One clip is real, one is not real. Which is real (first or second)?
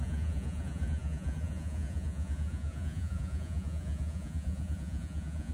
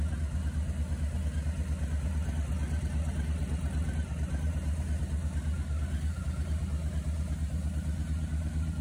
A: second